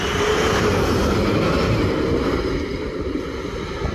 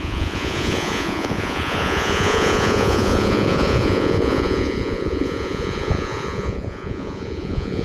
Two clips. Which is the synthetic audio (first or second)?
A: second